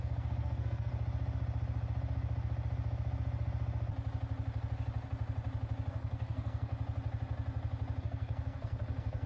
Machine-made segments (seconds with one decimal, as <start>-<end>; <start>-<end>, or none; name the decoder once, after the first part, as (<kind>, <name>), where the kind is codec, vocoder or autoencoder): 0.0-0.9 (codec, SNAC); 5.9-6.7; 8.0-9.3